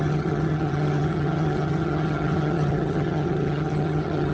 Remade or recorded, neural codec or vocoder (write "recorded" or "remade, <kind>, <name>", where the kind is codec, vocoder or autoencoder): remade, vocoder, HiFi-GAN